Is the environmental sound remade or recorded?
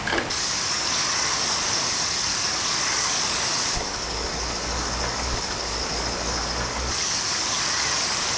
remade